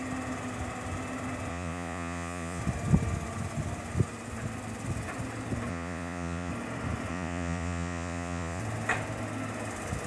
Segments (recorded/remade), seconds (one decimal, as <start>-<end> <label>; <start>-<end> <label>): 0.0-1.5 recorded; 1.5-2.6 remade; 2.6-5.7 recorded; 5.7-6.5 remade; 6.5-7.1 recorded; 7.1-8.6 remade; 8.6-10.1 recorded